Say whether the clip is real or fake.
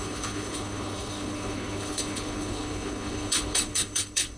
fake